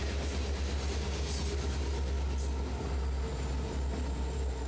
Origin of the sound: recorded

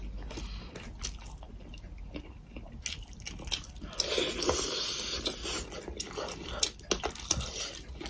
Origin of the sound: recorded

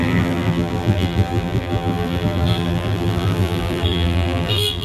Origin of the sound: remade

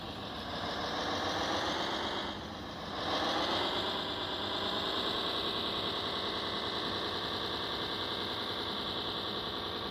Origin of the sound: recorded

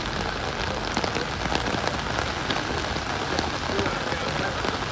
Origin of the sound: recorded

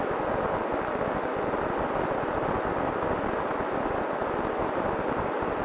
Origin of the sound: recorded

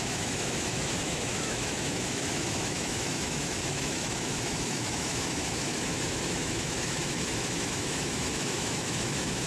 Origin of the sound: remade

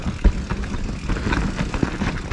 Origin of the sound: recorded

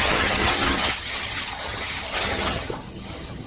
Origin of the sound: remade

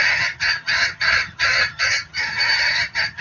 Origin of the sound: remade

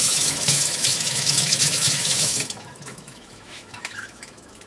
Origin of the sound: remade